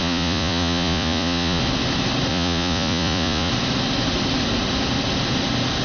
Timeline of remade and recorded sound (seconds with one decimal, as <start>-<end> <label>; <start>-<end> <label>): 0.0-1.6 remade; 1.6-2.3 recorded; 2.3-3.5 remade; 3.5-5.8 recorded